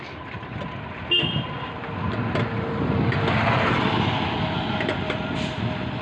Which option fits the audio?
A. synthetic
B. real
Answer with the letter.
B